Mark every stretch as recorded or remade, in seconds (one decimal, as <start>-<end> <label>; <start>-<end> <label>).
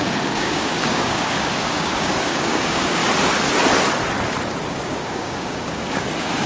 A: 0.0-3.0 remade; 3.0-4.7 recorded; 4.7-6.5 remade